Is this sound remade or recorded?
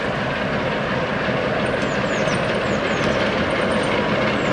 recorded